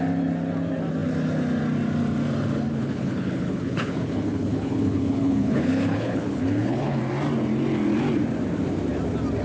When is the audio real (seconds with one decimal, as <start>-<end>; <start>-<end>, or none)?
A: 0.0-2.7; 7.0-9.4

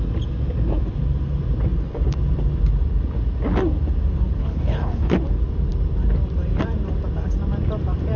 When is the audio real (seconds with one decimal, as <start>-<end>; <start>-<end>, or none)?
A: 0.0-4.4; 5.1-8.2

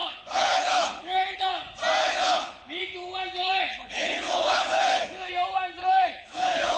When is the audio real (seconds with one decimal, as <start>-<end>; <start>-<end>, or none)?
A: 1.5-2.0; 2.8-3.4; 5.3-5.8

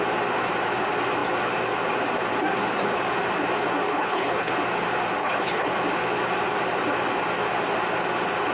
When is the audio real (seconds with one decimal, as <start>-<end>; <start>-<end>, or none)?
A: 0.0-3.9; 4.5-5.2; 5.7-8.5

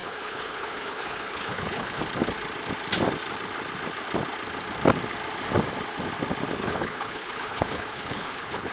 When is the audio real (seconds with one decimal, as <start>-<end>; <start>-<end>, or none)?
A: 2.0-6.6